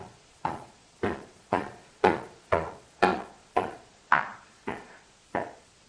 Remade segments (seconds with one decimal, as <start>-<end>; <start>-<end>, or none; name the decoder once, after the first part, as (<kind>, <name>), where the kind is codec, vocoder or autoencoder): 0.0-5.9 (vocoder, Vocos)